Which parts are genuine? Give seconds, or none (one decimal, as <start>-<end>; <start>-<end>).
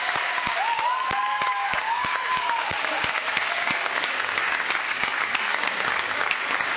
none